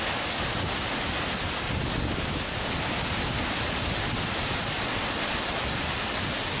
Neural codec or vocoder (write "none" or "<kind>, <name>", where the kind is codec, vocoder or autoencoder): none